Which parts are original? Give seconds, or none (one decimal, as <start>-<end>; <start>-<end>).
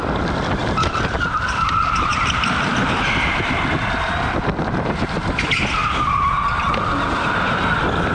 5.8-7.0